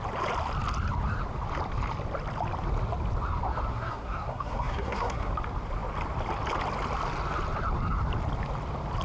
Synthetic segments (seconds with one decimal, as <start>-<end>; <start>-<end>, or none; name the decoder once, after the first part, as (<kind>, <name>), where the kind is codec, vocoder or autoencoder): 3.7-5.3 (codec, SNAC)